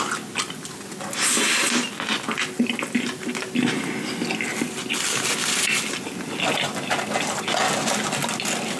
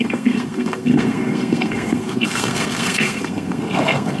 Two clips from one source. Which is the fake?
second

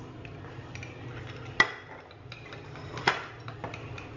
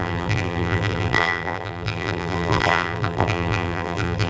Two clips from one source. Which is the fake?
second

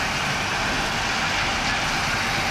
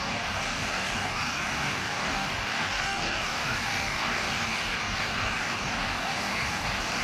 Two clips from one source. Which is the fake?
second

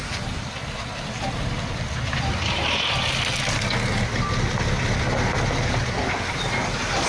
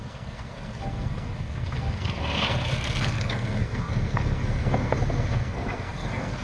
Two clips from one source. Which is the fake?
second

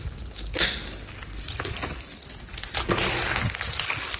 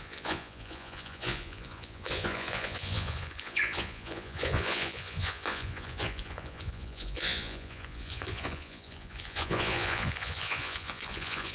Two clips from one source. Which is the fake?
second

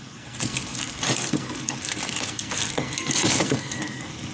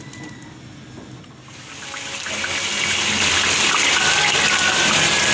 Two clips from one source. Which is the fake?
first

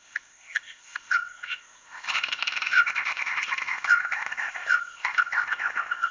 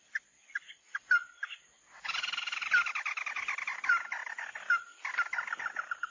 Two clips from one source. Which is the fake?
first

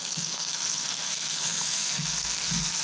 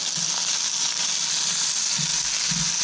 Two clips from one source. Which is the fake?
first